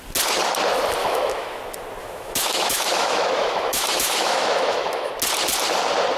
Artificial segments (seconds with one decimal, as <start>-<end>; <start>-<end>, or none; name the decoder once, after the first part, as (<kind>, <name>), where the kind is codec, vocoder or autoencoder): 1.0-1.6 (autoencoder, DAC-VAE); 2.0-5.1